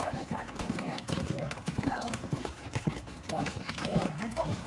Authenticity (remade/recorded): remade